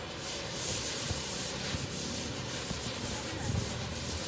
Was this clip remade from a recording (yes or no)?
no